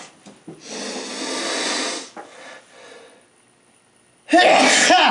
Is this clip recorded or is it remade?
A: recorded